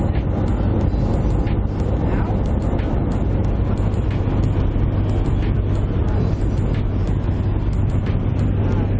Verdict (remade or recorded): recorded